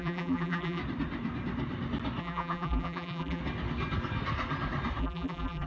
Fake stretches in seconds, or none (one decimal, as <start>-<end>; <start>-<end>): 0.0-0.8; 2.2-3.4; 5.0-5.7